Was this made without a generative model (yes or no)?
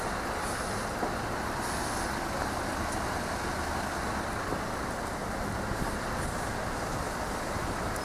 yes